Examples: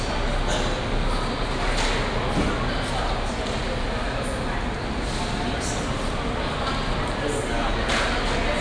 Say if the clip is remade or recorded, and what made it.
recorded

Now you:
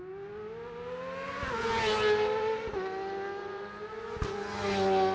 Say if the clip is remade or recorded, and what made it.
recorded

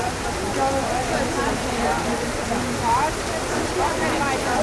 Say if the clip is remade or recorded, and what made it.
recorded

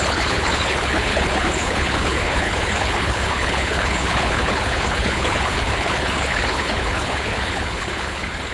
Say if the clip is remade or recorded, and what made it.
remade, codec, HILCodec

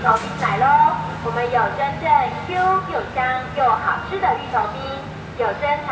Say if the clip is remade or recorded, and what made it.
recorded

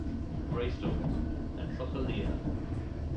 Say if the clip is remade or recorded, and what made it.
recorded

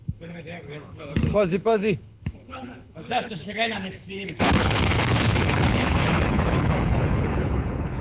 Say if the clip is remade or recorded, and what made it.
remade, codec, HILCodec